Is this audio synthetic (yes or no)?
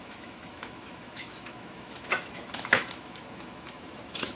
yes